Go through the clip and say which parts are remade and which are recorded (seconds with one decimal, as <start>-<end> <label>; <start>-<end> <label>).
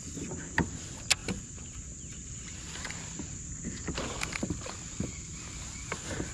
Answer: 0.0-6.3 recorded